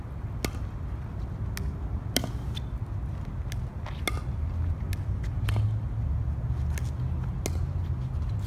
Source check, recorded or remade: recorded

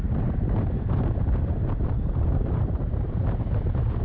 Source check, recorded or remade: remade